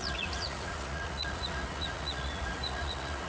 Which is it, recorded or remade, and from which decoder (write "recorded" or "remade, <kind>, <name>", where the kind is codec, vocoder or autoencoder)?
remade, vocoder, Vocos